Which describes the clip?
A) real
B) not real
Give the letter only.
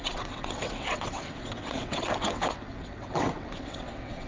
B